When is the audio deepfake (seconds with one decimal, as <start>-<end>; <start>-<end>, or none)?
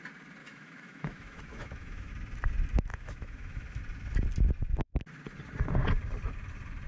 0.4-2.1; 2.9-3.8